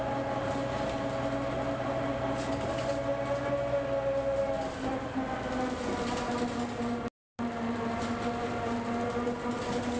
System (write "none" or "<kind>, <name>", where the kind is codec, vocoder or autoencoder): none